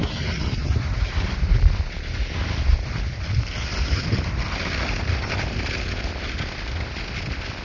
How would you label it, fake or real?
real